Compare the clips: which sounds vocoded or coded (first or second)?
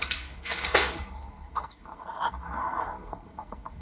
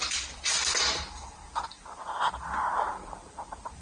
first